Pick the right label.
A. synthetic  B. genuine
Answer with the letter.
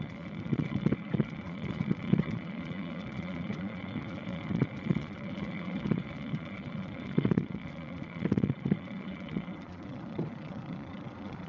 A